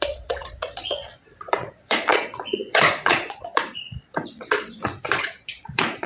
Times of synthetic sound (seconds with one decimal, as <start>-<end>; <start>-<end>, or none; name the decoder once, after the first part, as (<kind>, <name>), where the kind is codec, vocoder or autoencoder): 0.0-6.1 (vocoder, Vocos)